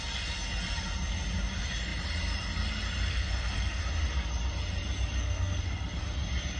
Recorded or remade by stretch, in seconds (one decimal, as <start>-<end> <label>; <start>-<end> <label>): 0.0-3.1 recorded; 3.1-3.8 remade; 3.8-5.2 recorded; 5.2-6.0 remade; 6.0-6.6 recorded